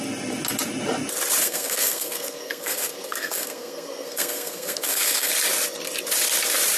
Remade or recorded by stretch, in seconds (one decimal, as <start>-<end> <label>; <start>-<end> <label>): 0.0-1.4 recorded; 1.4-5.3 remade; 5.3-6.8 recorded